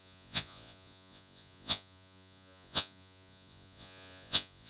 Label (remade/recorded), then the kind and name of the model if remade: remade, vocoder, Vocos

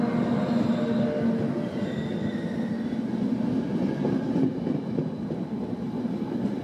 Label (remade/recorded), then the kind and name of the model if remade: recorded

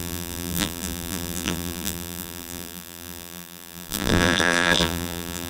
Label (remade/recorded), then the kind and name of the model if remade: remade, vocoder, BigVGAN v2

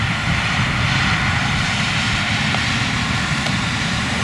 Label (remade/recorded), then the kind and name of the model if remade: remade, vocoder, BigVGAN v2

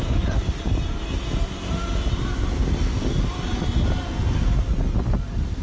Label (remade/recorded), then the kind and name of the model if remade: recorded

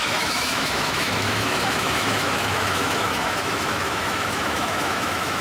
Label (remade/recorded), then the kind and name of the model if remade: remade, autoencoder, DAC-VAE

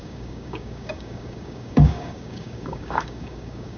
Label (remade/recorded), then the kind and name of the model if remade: remade, codec, DAC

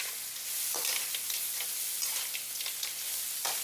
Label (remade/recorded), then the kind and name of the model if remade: recorded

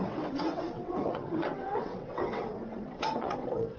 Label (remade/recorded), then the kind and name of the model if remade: remade, vocoder, WaveNeXt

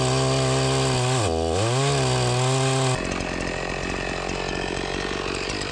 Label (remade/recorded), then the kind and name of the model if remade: recorded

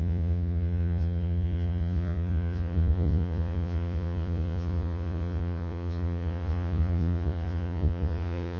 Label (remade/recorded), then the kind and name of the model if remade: remade, vocoder, Vocos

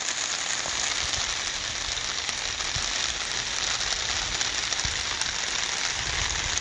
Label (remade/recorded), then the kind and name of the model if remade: recorded